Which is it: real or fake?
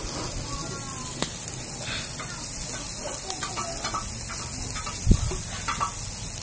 real